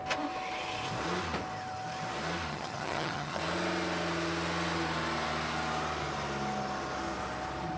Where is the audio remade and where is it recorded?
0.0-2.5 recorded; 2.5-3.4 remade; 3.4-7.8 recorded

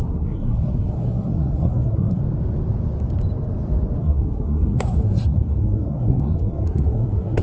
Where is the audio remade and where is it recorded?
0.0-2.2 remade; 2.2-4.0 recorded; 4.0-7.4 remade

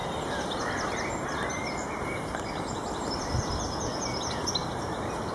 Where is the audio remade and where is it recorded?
0.0-3.2 remade; 3.2-4.6 recorded; 4.6-5.3 remade